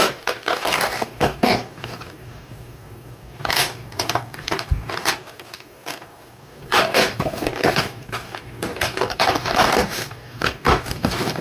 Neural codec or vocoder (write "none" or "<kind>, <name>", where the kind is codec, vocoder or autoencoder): codec, DAC